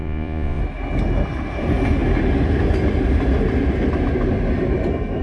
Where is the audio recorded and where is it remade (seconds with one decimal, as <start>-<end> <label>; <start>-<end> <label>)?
0.0-0.6 remade; 0.6-5.2 recorded